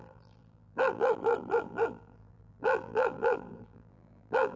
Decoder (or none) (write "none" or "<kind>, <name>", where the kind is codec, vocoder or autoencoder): vocoder, BigVGAN v2